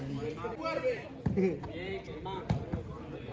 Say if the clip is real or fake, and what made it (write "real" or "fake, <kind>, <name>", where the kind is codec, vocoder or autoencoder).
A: real